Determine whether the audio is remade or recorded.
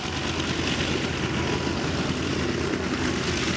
recorded